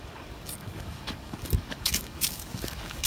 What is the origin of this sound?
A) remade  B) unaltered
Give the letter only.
A